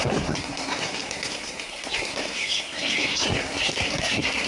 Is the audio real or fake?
fake